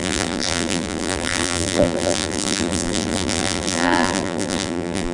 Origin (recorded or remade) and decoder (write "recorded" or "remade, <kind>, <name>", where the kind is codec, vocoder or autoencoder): remade, vocoder, BigVGAN v2